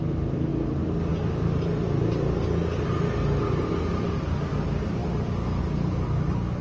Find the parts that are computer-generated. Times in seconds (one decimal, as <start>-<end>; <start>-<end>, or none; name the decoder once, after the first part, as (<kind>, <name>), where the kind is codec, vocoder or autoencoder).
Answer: none